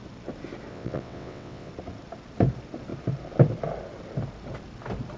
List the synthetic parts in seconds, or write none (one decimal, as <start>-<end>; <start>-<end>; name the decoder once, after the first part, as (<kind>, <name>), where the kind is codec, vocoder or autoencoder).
0.7-1.7 (vocoder, WaveNeXt)